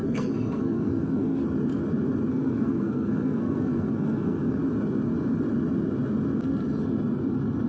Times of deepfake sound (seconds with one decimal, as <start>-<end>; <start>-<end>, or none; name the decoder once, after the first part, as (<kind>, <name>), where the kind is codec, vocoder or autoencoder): 0.0-1.4 (codec, SNAC); 2.3-4.6